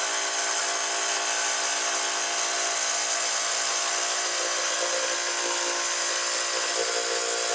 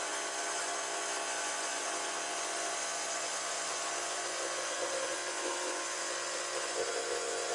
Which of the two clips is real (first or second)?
first